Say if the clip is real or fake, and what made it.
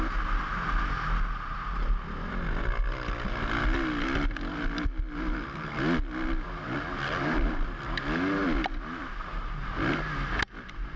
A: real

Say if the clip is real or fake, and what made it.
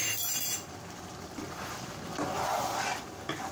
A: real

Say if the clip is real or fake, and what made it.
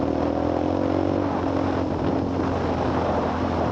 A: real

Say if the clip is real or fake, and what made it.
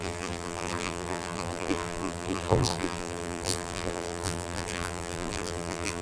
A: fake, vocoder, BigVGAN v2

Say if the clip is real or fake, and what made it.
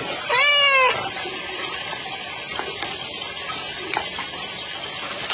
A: real